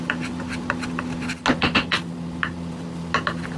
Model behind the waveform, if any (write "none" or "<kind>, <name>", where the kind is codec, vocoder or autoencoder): none